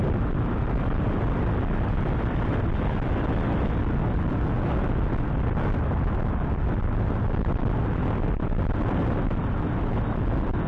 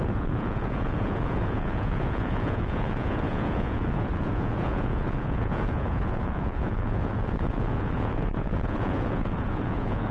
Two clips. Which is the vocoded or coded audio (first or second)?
second